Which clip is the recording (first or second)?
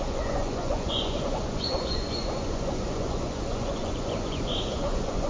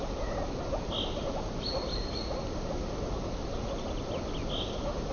second